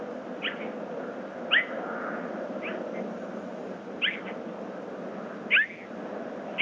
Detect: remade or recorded recorded